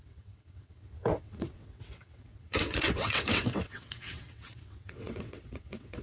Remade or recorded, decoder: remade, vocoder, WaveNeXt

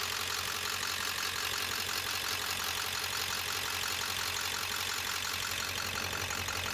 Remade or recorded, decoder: recorded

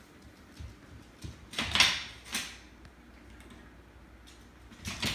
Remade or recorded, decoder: recorded